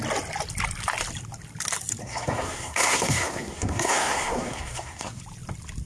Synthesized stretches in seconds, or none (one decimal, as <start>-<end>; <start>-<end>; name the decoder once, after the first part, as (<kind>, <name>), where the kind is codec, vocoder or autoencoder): 2.0-5.2 (codec, SNAC)